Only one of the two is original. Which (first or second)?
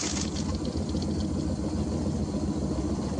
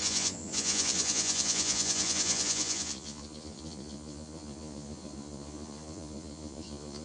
first